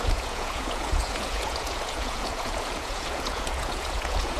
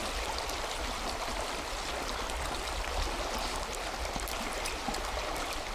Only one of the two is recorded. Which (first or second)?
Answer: second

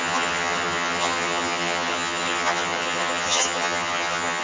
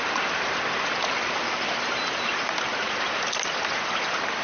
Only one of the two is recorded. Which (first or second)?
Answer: second